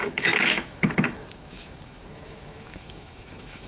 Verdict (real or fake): fake